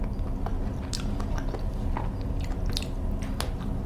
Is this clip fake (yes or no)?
no